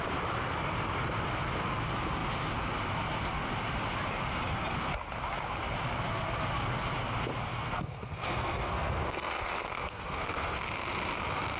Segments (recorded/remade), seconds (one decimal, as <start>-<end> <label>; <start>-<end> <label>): 0.0-7.5 recorded; 7.5-10.6 remade; 10.6-11.6 recorded